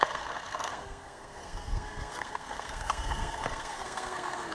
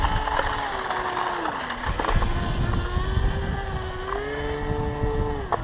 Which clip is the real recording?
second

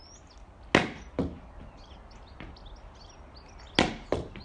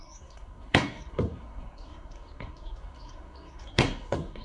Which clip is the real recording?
first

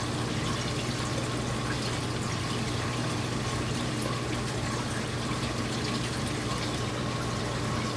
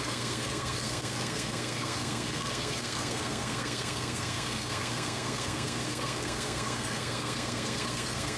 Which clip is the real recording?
first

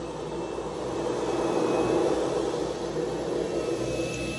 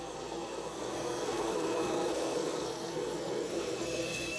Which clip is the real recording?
first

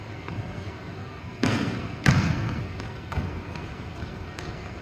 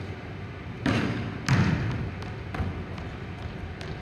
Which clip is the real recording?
second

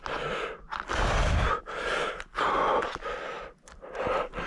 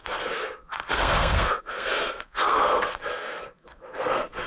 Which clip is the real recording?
first